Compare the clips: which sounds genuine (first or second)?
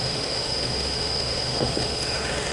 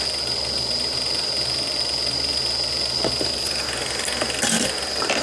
second